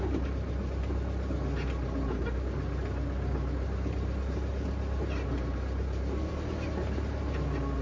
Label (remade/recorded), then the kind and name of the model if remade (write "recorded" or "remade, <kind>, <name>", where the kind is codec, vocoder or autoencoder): recorded